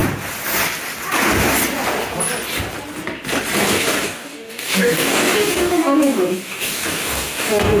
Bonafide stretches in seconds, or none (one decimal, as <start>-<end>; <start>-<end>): 0.0-3.6